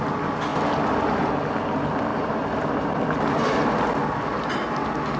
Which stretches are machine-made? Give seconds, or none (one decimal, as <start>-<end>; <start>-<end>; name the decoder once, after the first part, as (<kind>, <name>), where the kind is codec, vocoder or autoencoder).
2.1-2.9 (vocoder, BigVGAN v2)

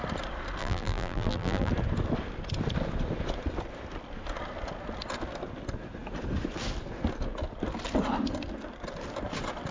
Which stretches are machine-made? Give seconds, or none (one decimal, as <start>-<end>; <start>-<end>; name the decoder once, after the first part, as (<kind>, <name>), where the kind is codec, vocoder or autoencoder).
0.6-1.7 (vocoder, BigVGAN v2)